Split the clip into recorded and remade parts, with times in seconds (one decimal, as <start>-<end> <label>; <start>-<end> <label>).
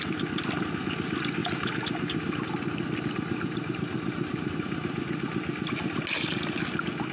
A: 0.0-7.1 recorded